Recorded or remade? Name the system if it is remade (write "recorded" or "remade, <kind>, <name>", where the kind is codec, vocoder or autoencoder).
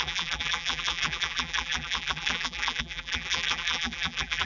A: remade, vocoder, BigVGAN v2